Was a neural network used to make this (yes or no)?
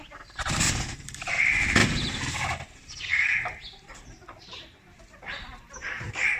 yes